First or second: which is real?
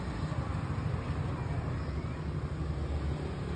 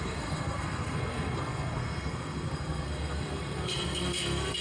first